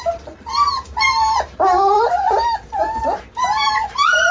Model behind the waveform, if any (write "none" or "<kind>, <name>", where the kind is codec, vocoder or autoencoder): vocoder, BigVGAN v2